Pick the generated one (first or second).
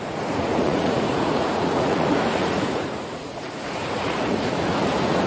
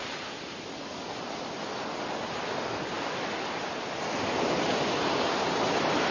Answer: first